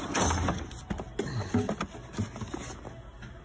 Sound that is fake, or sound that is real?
real